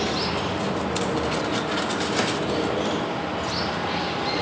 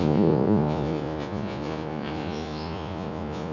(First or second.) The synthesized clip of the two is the second